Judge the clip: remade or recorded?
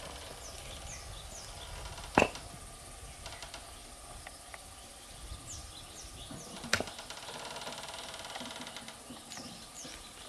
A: recorded